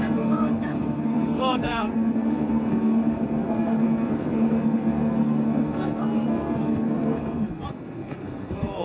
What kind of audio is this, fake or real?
fake